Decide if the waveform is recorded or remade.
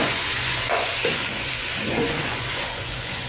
remade